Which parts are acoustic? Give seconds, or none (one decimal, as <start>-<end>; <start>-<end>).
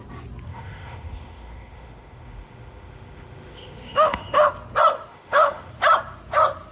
0.0-0.5; 4.5-5.1; 5.7-6.7